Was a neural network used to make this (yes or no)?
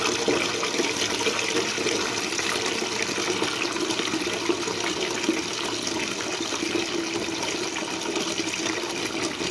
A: no